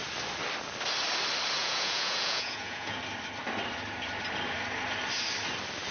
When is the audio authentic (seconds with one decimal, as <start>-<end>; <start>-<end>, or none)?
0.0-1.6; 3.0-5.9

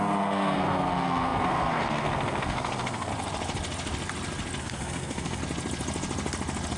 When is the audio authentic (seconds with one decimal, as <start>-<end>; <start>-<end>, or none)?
3.1-4.6; 5.4-6.8

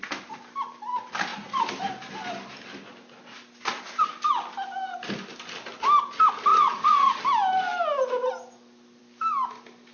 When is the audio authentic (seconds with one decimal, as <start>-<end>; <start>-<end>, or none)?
0.0-6.5; 7.2-9.9

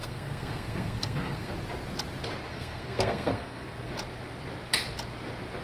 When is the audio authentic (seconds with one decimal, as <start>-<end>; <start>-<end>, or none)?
1.5-2.5; 3.9-5.6